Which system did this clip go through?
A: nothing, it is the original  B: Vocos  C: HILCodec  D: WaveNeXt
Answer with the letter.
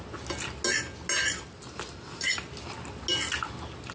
A